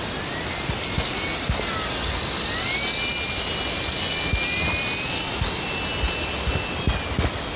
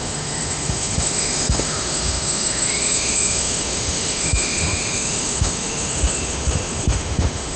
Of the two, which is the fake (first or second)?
second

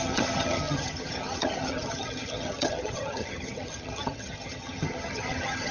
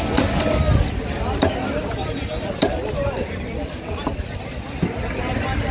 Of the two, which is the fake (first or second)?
first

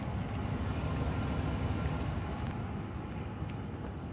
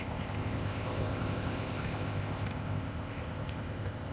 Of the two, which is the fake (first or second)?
second